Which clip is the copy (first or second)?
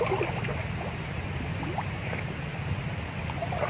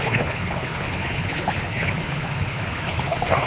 second